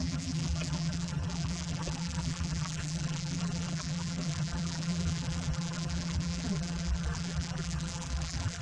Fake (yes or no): yes